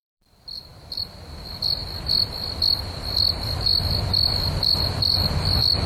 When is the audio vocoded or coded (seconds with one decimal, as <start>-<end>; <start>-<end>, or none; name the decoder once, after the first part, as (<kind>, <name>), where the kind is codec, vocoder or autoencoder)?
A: 0.0-1.8 (vocoder, BigVGAN v2); 2.3-3.7; 4.8-5.9